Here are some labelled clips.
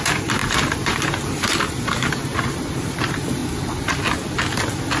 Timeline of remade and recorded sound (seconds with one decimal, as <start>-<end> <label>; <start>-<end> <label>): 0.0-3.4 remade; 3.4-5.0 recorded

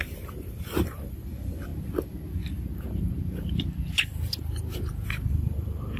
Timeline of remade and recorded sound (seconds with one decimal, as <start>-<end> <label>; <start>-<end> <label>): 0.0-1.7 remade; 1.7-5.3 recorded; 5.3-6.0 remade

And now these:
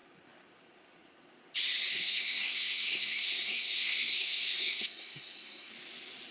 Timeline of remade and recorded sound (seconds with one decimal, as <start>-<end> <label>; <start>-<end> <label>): 0.0-1.9 recorded; 1.9-5.7 remade; 5.7-6.3 recorded

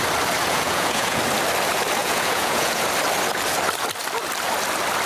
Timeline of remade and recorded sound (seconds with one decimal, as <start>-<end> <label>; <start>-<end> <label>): 0.0-0.4 recorded; 0.4-1.2 remade; 1.2-2.0 recorded; 2.0-2.8 remade; 2.8-5.1 recorded